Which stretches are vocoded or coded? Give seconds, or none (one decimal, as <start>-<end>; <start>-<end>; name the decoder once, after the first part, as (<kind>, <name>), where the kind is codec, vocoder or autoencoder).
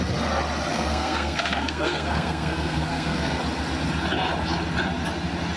0.7-3.4 (codec, SNAC)